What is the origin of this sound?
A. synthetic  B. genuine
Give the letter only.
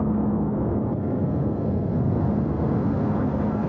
A